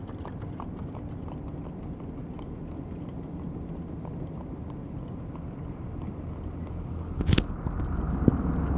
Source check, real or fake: real